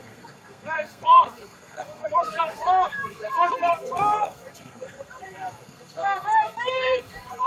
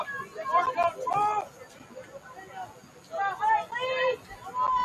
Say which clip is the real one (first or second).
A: second